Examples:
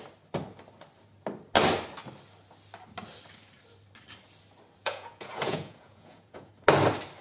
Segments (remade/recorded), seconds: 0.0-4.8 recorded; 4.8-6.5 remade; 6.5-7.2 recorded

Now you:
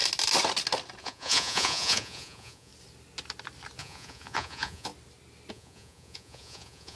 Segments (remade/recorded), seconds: 0.0-1.0 recorded; 1.0-2.7 remade; 2.7-3.8 recorded; 3.8-4.9 remade; 4.9-5.5 recorded; 5.5-7.0 remade